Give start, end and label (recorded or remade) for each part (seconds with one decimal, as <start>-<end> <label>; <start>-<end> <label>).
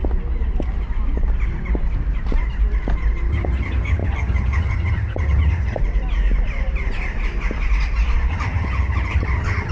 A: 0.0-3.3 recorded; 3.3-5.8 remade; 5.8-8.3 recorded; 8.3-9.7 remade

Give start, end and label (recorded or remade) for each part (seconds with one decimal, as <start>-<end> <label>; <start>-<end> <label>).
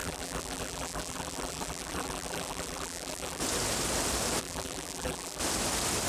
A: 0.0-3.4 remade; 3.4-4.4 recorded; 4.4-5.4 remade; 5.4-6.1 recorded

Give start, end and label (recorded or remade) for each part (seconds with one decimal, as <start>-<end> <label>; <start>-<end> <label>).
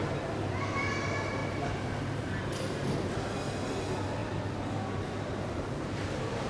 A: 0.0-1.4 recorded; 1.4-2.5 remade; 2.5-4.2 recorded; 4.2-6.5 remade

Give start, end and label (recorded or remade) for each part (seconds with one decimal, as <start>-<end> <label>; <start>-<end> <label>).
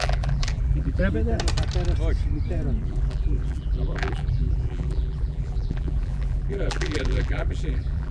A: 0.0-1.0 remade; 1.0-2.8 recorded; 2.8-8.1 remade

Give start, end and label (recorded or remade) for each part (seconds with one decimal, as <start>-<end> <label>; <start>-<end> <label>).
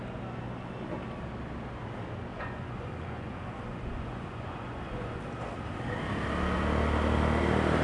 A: 0.0-2.3 recorded; 2.3-5.2 remade; 5.2-7.8 recorded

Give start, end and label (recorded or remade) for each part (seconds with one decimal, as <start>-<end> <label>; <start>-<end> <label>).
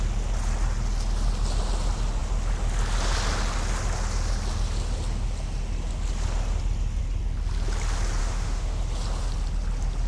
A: 0.0-8.2 recorded; 8.2-8.8 remade; 8.8-10.1 recorded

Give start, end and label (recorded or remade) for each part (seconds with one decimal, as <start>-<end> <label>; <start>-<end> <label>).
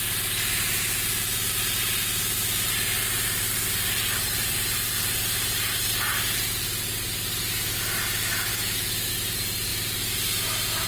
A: 0.0-8.5 recorded; 8.5-9.1 remade; 9.1-10.9 recorded